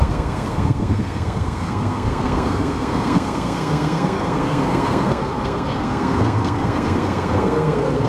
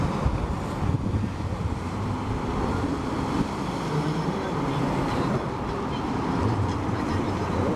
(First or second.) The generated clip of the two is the first